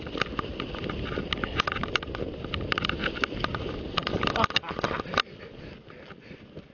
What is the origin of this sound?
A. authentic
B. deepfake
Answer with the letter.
A